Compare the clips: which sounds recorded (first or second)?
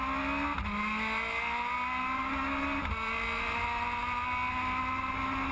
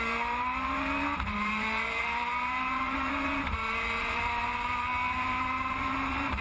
first